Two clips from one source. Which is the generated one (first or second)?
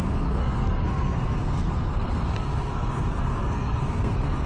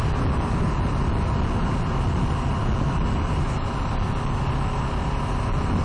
first